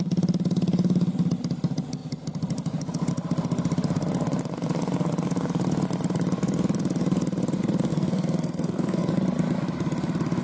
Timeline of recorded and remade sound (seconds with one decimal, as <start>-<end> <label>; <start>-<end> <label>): 0.0-7.9 recorded; 7.9-9.1 remade; 9.1-10.4 recorded